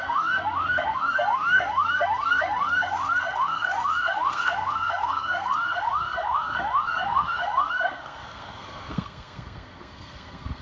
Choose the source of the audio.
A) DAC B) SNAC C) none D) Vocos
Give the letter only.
B